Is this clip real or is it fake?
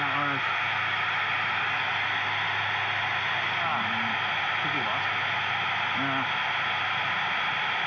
real